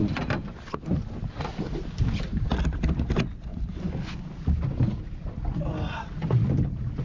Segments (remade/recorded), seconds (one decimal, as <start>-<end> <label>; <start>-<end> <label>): 0.0-3.5 recorded; 3.5-4.0 remade; 4.0-7.0 recorded

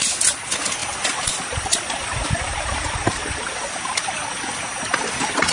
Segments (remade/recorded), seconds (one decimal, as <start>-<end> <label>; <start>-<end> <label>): 0.0-5.5 recorded

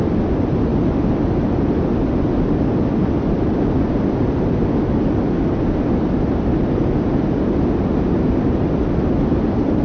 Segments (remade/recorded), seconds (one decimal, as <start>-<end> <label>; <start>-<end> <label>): 0.0-0.7 recorded; 0.7-1.3 remade; 1.3-3.0 recorded; 3.0-4.5 remade; 4.5-9.8 recorded

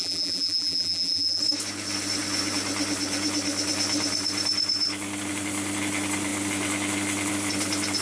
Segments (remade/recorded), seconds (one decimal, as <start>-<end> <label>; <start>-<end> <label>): 0.0-1.4 remade; 1.4-8.0 recorded

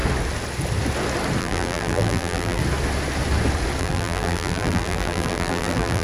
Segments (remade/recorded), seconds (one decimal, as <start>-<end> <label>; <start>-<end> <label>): 0.0-1.4 recorded; 1.4-2.6 remade; 2.6-3.8 recorded; 3.8-6.0 remade

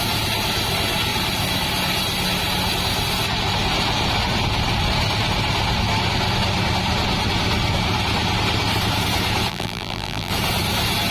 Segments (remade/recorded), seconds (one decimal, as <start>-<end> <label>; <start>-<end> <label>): 0.0-9.5 recorded; 9.5-10.3 remade; 10.3-11.1 recorded

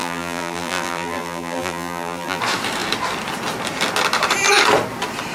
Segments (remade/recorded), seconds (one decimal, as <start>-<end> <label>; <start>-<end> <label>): 0.0-2.4 remade; 2.4-5.3 recorded

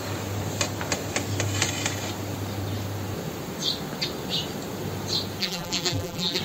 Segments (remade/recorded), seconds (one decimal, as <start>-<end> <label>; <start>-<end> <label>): 0.0-5.4 recorded; 5.4-6.4 remade